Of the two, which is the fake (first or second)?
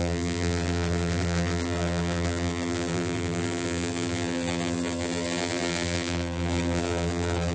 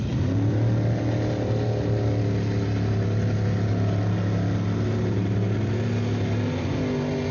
first